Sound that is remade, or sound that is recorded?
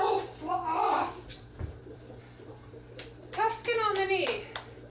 recorded